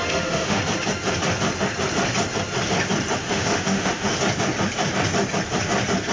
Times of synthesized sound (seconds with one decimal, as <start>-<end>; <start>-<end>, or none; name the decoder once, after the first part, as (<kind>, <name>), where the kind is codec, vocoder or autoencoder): 0.0-0.6 (autoencoder, DAC-VAE); 3.2-4.2